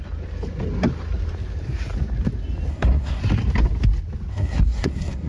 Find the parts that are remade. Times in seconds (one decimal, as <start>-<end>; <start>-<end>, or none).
2.7-3.2; 4.3-5.3